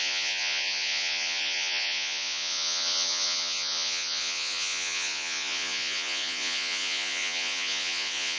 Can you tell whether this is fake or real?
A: fake